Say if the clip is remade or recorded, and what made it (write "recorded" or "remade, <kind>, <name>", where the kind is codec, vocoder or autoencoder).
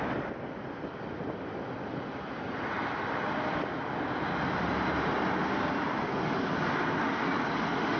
recorded